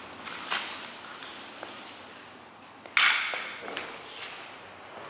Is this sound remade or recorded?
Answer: recorded